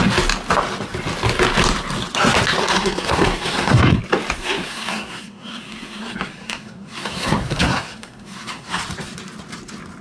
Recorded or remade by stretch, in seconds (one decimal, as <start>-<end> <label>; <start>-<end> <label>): 0.0-2.6 recorded; 2.6-4.0 remade; 4.0-4.4 recorded; 4.4-8.8 remade; 8.8-10.0 recorded